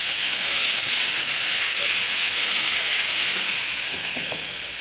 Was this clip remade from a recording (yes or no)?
yes